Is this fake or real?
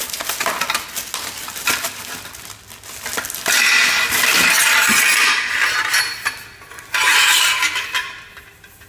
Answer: real